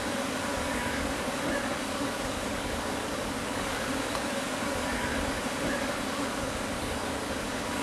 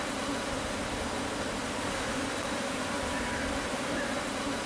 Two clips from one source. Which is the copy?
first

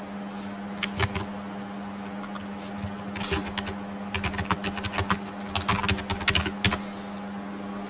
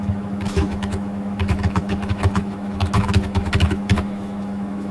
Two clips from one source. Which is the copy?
second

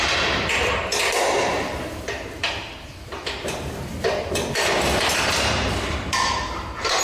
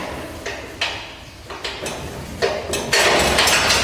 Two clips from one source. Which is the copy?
first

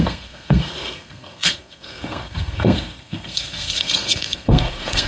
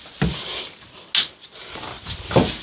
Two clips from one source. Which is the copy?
first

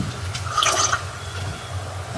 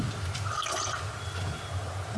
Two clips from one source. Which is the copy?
first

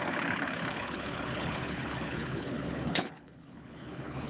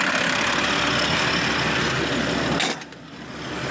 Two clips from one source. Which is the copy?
first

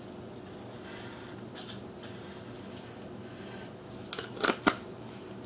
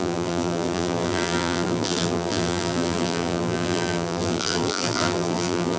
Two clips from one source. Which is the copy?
second